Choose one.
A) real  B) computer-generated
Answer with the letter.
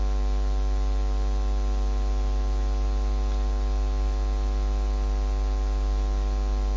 A